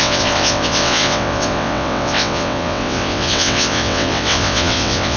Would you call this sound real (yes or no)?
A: no